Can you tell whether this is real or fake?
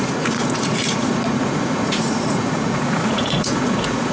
fake